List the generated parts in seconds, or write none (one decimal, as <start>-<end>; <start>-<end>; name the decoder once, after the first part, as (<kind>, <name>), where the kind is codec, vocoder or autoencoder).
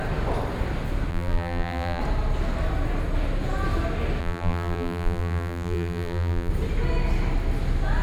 1.1-2.0 (vocoder, BigVGAN v2); 4.2-6.5